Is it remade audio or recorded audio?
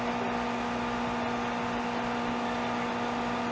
recorded